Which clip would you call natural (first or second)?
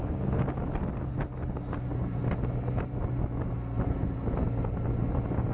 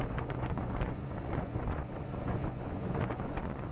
first